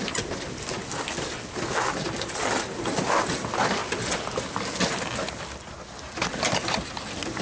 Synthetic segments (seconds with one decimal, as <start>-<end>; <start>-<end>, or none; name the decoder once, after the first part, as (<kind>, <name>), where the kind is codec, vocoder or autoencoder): none